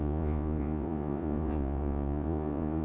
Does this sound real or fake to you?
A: fake